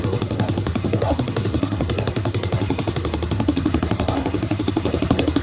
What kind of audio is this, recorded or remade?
remade